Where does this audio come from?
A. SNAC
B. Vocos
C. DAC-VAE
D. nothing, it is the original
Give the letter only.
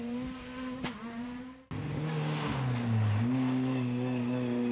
D